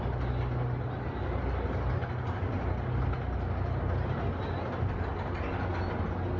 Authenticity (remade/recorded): recorded